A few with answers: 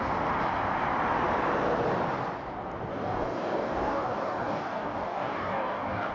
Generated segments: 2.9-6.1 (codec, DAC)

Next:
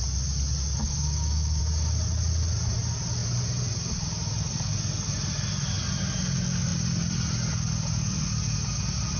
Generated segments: 0.8-1.6 (codec, DAC)

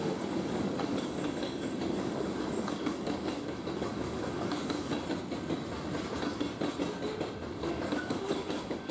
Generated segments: 0.0-4.9 (codec, DAC); 7.5-8.9

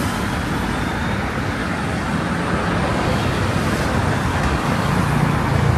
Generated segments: 1.6-2.3 (codec, DAC); 2.9-3.4; 4.3-4.9

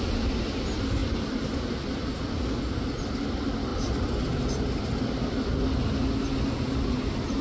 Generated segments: none

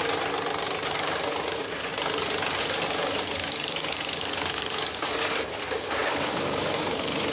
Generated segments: 1.4-1.9 (codec, DAC); 2.6-7.3

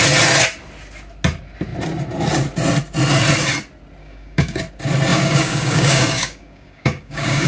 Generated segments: 4.0-4.6 (codec, DAC); 5.1-7.5

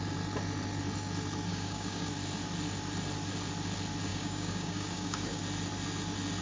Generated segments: 1.5-2.1 (codec, DAC); 4.1-5.4